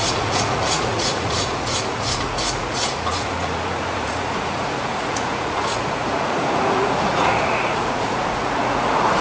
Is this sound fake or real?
fake